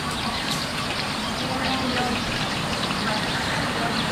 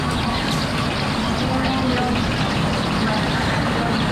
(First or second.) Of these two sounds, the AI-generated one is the first